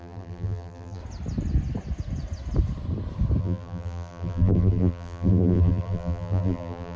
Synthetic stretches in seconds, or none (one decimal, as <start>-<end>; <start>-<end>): 0.0-1.0; 3.4-7.0